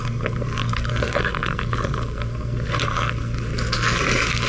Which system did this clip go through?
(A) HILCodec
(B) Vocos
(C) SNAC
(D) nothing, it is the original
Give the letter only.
C